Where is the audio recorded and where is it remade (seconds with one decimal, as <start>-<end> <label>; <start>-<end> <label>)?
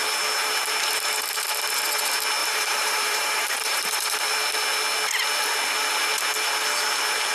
0.0-2.4 recorded; 2.4-4.2 remade; 4.2-7.3 recorded